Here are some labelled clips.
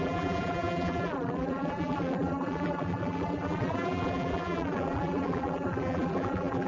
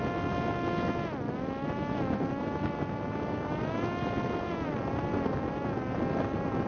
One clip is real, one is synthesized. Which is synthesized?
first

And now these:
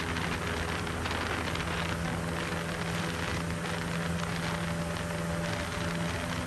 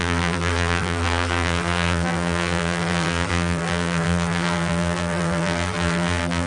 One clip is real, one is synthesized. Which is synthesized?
second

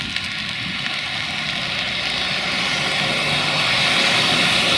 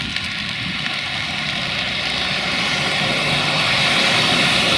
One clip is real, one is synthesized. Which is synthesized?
second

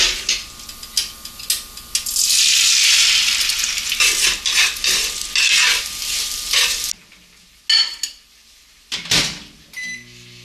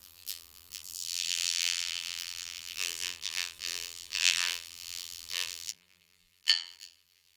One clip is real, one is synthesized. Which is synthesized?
second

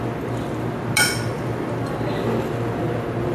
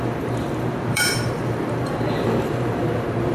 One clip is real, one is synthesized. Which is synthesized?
second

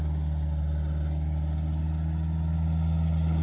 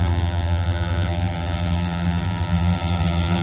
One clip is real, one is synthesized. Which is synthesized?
second